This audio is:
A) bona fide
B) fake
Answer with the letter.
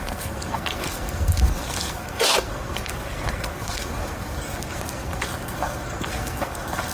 B